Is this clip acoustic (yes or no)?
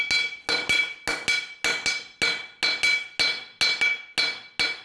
yes